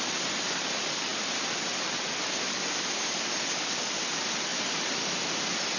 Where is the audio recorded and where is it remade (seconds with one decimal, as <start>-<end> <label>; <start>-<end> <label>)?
0.0-5.8 recorded